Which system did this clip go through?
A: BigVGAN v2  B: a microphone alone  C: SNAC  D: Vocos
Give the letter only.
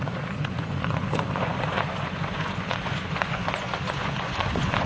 D